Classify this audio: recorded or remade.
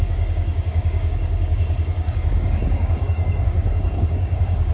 remade